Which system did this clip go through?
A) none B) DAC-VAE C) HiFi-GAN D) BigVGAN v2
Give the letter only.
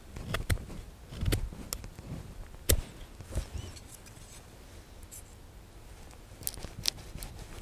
A